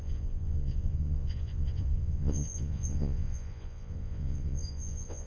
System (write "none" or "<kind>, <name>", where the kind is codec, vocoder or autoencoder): vocoder, Vocos